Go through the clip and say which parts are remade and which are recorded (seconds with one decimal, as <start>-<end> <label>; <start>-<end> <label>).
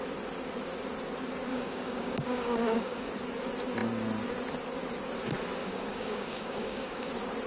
0.0-1.5 recorded; 1.5-3.1 remade; 3.1-5.6 recorded; 5.6-7.1 remade; 7.1-7.5 recorded